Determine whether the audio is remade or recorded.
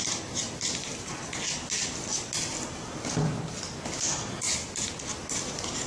recorded